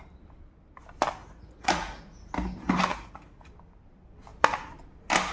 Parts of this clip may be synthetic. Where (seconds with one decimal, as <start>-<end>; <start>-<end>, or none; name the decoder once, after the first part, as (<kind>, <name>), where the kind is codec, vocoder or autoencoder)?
1.2-2.2 (vocoder, Vocos); 2.9-3.5